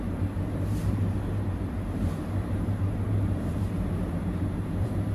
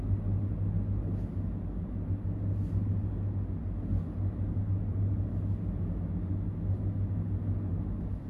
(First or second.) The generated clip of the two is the first